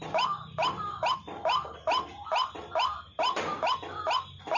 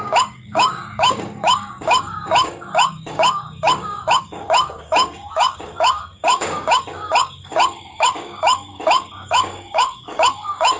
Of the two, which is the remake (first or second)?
second